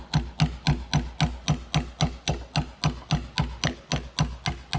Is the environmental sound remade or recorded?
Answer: recorded